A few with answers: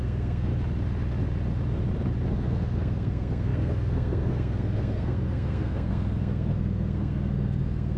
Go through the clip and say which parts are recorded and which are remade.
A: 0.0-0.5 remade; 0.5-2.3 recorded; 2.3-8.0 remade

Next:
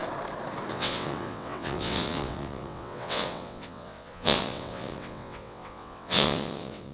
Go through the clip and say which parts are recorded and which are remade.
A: 0.0-0.7 recorded; 0.7-6.9 remade

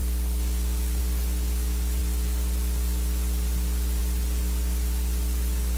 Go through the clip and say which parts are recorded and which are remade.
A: 0.0-5.8 recorded

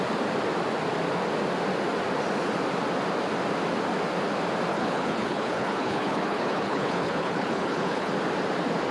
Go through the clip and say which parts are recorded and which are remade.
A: 0.0-4.7 recorded; 4.7-8.1 remade; 8.1-8.9 recorded